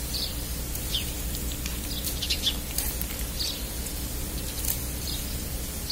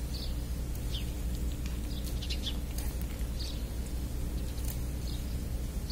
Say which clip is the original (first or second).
second